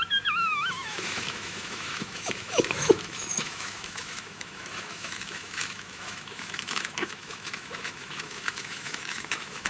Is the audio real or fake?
fake